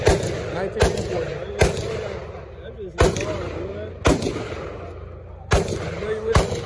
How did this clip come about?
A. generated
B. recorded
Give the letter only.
B